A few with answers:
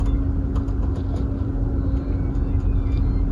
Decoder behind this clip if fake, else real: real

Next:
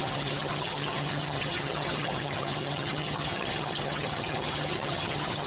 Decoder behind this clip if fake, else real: fake, vocoder, HiFi-GAN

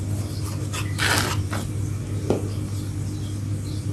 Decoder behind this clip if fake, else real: real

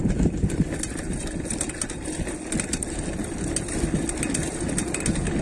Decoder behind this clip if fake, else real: real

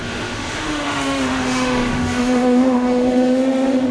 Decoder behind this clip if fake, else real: fake, autoencoder, DAC-VAE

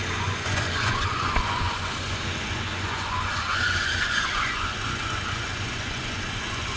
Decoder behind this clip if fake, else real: fake, vocoder, Vocos